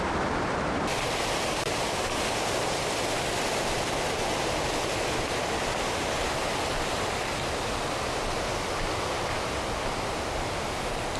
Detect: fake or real real